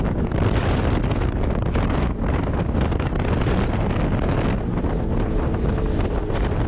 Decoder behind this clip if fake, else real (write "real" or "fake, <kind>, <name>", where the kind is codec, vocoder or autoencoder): real